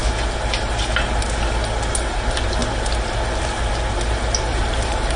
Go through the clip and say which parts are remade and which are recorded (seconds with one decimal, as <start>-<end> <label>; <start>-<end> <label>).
0.0-4.5 recorded; 4.5-5.2 remade